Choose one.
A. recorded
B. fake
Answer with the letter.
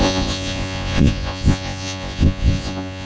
B